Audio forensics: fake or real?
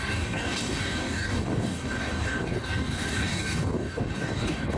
fake